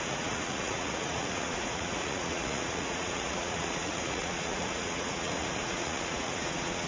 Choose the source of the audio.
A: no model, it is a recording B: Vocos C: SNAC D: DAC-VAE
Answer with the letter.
B